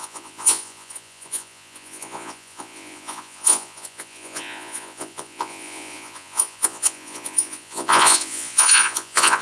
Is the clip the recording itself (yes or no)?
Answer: no